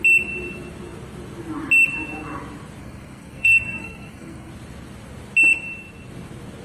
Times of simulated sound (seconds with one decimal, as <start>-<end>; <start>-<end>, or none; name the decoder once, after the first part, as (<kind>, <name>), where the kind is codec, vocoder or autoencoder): 2.8-4.5 (codec, SNAC)